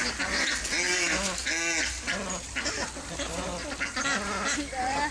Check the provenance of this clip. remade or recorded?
recorded